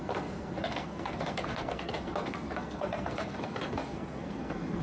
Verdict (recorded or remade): remade